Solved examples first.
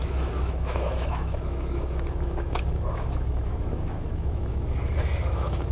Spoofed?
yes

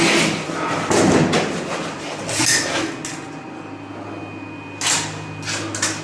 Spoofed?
no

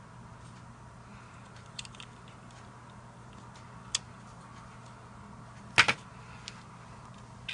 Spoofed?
no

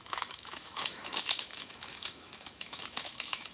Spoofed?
yes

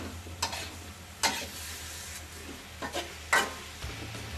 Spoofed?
no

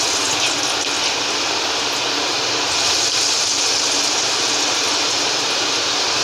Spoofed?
no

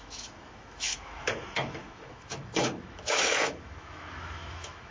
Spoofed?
yes